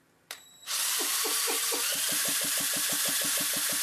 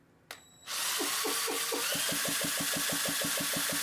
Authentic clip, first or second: second